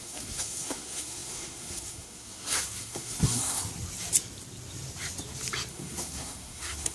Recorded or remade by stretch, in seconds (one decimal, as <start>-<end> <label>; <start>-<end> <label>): 0.0-3.6 remade; 3.6-5.7 recorded; 5.7-6.9 remade